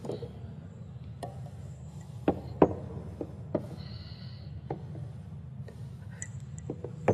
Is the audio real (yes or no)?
yes